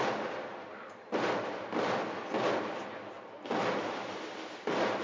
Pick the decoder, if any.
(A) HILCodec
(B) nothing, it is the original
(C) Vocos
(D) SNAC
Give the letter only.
B